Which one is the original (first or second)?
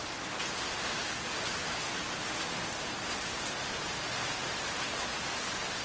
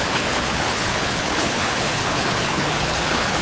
first